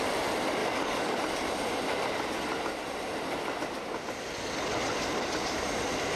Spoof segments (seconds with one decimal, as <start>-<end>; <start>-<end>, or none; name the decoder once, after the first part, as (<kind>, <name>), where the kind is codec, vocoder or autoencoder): 0.6-1.2 (codec, DAC)

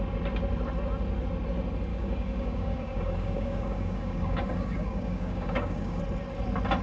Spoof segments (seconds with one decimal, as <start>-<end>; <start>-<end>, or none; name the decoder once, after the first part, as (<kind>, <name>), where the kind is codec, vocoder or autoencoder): 1.9-6.0 (codec, DAC)

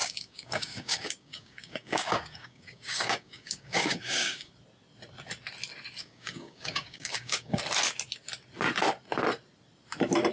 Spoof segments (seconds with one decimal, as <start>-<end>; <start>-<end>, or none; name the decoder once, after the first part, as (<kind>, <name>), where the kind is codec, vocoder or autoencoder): 0.0-4.5 (codec, DAC); 6.0-7.6

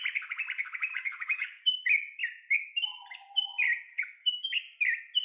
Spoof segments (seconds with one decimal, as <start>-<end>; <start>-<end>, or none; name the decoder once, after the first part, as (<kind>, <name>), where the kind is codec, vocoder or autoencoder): 0.9-1.8 (codec, DAC); 3.9-4.6